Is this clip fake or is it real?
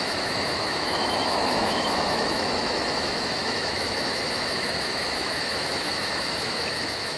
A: fake